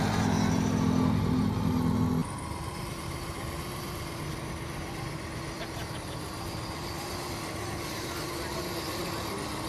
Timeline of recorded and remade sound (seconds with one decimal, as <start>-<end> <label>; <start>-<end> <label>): 0.0-9.7 recorded